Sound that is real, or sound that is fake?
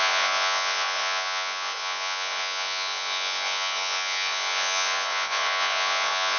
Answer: fake